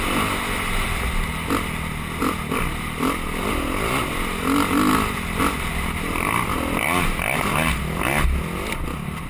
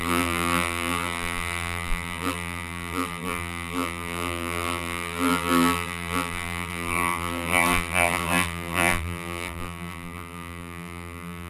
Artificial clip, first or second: second